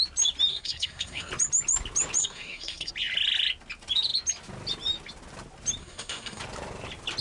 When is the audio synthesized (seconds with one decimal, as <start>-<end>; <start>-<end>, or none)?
0.5-1.3; 2.2-2.9; 5.8-6.4